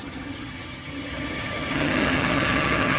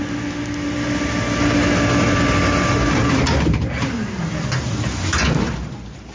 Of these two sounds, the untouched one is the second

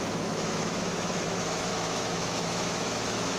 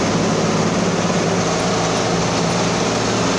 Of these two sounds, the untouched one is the second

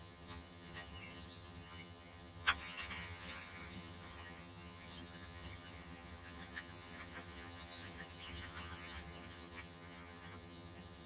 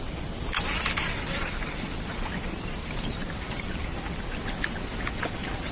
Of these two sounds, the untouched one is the second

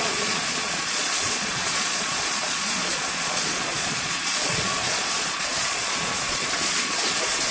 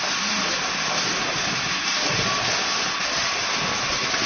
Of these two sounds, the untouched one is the second